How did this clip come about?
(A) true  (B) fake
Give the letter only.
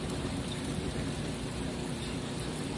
B